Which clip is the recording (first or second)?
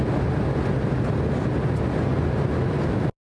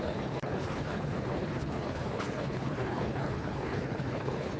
first